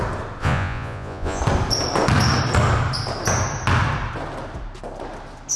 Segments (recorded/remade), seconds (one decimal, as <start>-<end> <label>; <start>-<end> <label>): 0.0-0.4 recorded; 0.4-1.4 remade; 1.4-5.6 recorded